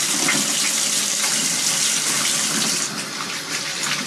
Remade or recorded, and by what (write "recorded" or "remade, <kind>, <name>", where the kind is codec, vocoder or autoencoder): remade, vocoder, BigVGAN v2